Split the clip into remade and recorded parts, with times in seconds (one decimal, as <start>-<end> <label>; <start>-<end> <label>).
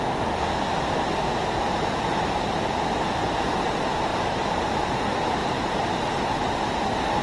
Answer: 0.0-1.3 recorded; 1.3-2.7 remade; 2.7-4.1 recorded; 4.1-4.6 remade; 4.6-5.4 recorded; 5.4-6.7 remade; 6.7-7.2 recorded